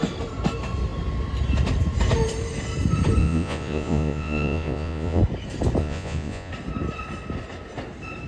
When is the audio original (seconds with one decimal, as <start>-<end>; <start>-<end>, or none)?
0.0-3.2; 5.2-5.8; 6.5-8.3